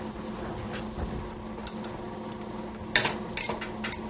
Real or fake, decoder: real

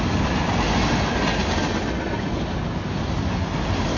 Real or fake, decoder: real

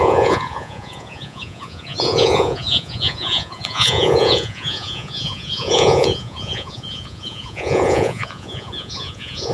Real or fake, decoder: fake, vocoder, Vocos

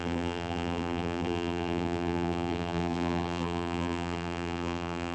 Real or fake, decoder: fake, vocoder, BigVGAN v2